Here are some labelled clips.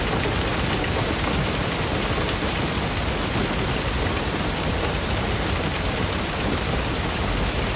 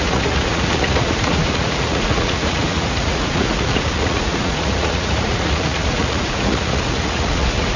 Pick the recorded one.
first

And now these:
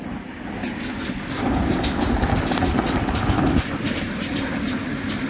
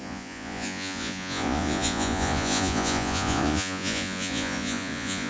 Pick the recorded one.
first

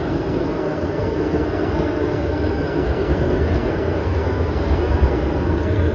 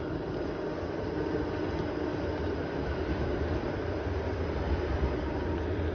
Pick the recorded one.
second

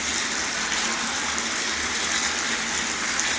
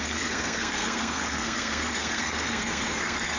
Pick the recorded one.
first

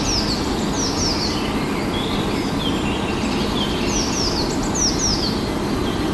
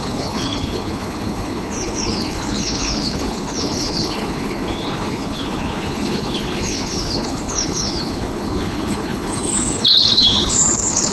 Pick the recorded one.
first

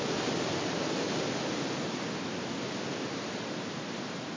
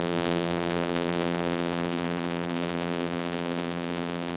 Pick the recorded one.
first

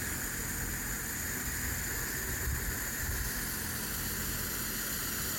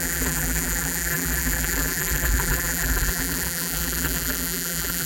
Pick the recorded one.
first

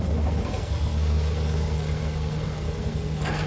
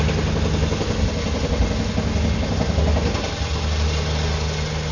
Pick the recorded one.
second